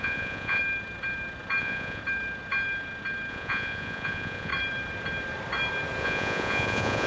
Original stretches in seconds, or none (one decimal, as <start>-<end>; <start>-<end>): 0.6-1.6; 2.0-3.3; 4.5-6.0